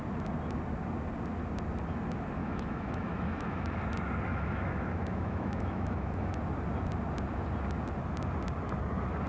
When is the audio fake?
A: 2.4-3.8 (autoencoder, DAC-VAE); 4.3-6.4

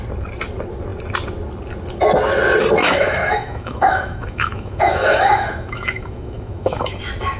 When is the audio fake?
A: 2.8-7.0 (autoencoder, DAC-VAE)